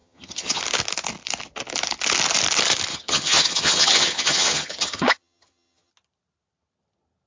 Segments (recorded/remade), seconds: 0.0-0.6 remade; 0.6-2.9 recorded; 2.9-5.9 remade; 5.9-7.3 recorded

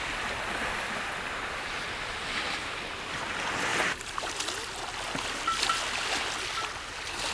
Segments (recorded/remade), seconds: 0.0-3.7 recorded; 3.7-4.4 remade; 4.4-7.3 recorded

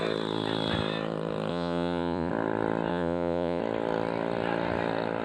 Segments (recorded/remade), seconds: 0.0-1.5 recorded; 1.5-2.3 remade; 2.3-2.9 recorded; 2.9-3.6 remade; 3.6-5.2 recorded

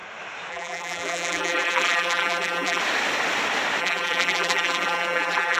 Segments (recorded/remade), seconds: 0.0-0.5 recorded; 0.5-2.8 remade; 2.8-3.8 recorded; 3.8-5.6 remade

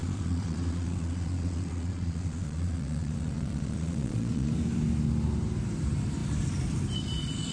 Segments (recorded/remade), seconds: 0.0-4.5 remade; 4.5-7.5 recorded

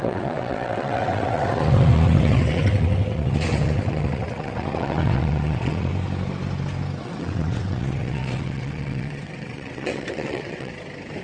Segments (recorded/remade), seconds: 0.0-5.9 remade; 5.9-7.0 recorded; 7.0-10.7 remade; 10.7-11.2 recorded